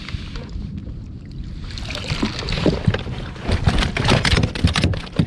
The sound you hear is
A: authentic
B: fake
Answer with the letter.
A